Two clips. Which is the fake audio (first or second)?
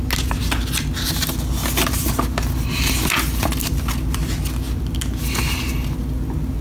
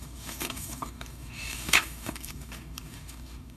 second